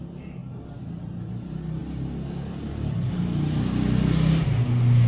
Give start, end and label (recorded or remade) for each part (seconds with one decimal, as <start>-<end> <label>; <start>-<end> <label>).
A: 0.0-5.1 recorded